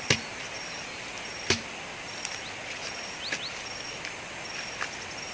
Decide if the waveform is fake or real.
real